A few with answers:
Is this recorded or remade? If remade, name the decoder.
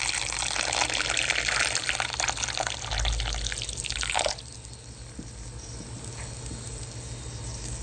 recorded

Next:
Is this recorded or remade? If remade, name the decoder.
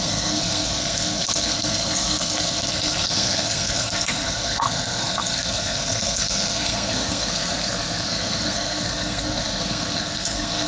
remade, codec, SNAC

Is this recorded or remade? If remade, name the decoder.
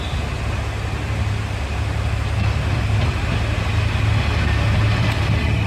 recorded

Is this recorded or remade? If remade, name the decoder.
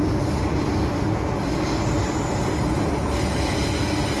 recorded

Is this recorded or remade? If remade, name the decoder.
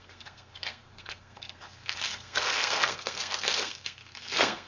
remade, codec, SNAC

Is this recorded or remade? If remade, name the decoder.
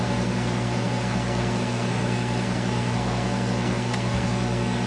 remade, codec, SNAC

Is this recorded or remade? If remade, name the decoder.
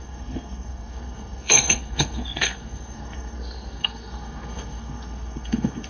remade, codec, SNAC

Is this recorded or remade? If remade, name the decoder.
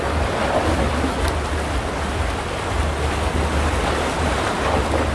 recorded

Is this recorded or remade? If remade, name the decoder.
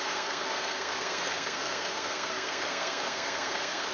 remade, codec, SNAC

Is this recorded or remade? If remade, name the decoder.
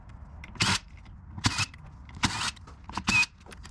recorded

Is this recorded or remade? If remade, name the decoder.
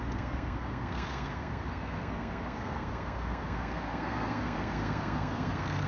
remade, codec, SNAC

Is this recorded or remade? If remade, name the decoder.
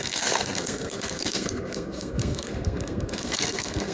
remade, codec, SNAC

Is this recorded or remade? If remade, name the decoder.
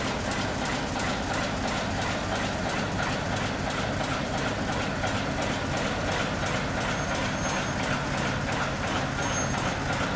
recorded